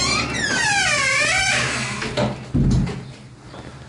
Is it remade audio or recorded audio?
recorded